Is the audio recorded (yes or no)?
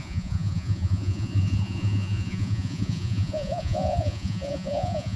no